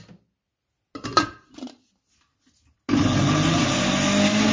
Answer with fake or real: real